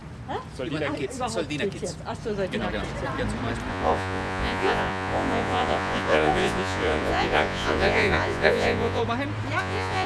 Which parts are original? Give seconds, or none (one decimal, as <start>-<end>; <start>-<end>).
0.0-3.7; 9.0-9.6

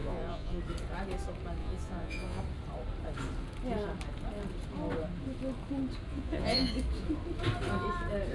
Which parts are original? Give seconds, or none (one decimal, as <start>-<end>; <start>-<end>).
0.6-1.6; 2.4-6.1; 6.7-8.3

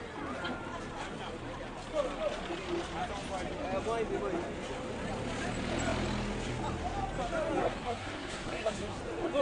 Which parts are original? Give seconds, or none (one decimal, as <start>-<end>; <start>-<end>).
0.0-7.6; 9.0-9.4

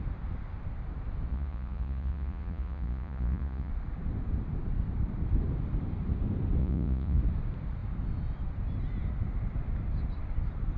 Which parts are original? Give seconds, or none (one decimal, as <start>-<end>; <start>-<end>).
0.0-1.3; 3.7-6.6; 7.2-10.8